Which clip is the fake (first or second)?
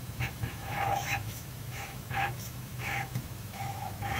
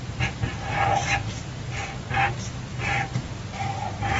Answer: first